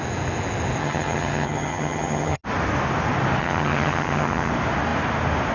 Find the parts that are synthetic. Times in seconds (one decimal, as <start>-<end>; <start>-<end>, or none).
0.8-2.4; 3.4-4.5